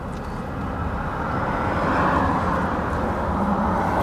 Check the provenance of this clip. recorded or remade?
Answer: recorded